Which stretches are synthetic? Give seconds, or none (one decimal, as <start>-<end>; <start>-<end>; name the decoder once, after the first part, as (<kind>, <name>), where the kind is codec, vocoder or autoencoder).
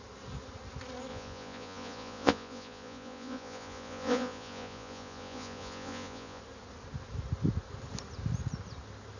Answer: 1.1-6.4 (vocoder, Vocos)